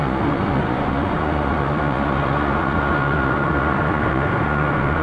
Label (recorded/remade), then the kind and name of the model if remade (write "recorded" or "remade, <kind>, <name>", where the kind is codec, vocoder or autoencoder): remade, vocoder, Vocos